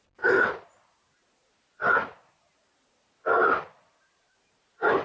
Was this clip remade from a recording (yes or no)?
no